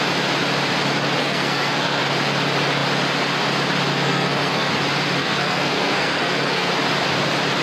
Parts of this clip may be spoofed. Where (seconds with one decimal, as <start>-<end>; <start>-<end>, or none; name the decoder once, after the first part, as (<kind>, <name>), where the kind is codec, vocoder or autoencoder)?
1.2-2.0 (codec, SNAC); 3.9-4.7; 5.2-6.7